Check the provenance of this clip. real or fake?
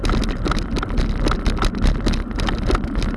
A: real